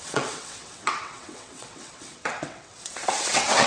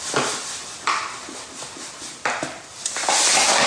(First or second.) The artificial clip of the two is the first